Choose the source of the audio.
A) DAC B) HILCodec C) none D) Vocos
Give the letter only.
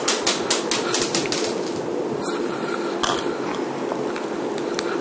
C